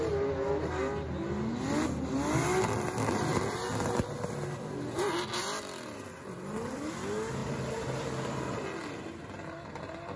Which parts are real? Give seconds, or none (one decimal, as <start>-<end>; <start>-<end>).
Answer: 0.0-7.4; 8.6-10.2